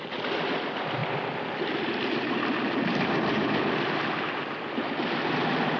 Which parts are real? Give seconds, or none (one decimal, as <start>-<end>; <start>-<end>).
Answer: 0.0-5.8